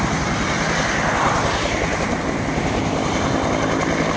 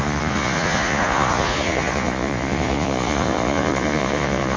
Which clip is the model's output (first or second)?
second